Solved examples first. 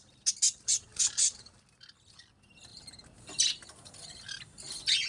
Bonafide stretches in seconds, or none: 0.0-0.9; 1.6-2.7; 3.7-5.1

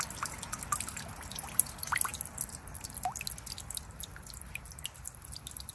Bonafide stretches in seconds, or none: 0.0-5.7

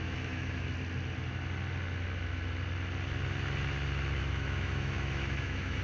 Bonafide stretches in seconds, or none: 0.7-4.2